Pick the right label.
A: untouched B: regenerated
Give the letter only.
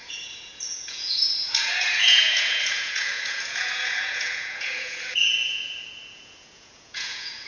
B